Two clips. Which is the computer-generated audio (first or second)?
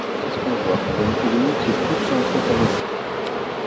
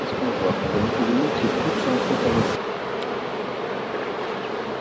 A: second